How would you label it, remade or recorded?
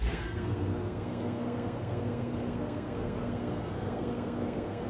remade